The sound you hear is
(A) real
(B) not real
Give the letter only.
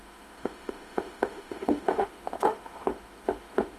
B